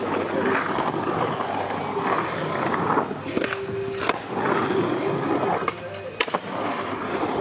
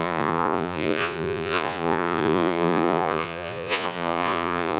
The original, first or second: first